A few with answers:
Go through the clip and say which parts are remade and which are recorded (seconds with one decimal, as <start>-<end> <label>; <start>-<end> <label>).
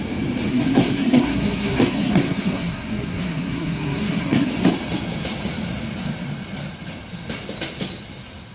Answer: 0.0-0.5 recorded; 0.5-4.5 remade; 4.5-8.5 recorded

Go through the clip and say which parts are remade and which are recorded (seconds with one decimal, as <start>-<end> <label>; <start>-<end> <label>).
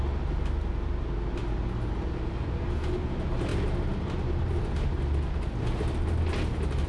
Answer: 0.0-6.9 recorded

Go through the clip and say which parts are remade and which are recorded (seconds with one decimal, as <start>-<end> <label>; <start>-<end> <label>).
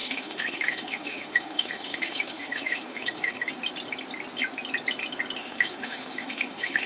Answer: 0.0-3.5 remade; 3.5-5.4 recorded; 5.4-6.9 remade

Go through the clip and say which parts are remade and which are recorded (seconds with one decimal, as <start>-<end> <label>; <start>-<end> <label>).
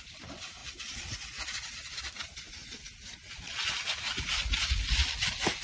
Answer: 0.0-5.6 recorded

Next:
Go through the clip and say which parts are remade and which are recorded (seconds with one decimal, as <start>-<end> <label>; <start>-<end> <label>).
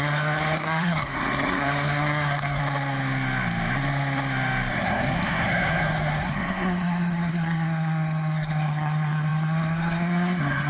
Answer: 0.0-2.6 remade; 2.6-4.7 recorded; 4.7-10.7 remade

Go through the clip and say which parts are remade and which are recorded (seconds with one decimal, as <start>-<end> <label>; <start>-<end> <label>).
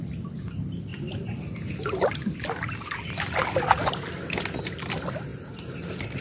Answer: 0.0-6.2 recorded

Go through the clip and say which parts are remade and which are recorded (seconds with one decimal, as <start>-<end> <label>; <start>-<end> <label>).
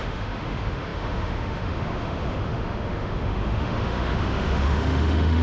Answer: 0.0-5.4 remade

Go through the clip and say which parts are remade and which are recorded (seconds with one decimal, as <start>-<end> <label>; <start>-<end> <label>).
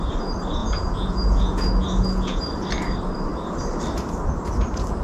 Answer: 0.0-0.6 recorded; 0.6-2.4 remade; 2.4-5.0 recorded